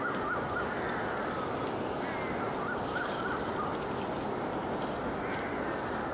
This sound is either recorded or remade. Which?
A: recorded